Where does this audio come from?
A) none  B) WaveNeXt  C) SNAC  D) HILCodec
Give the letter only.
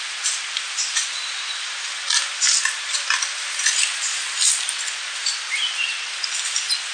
A